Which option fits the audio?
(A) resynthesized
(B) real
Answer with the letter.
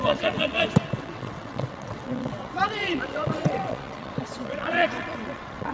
A